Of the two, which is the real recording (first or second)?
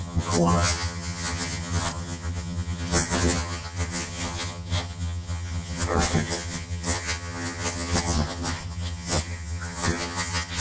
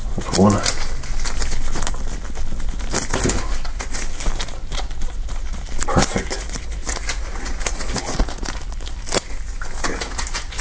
second